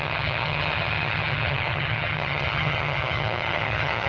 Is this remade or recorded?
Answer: remade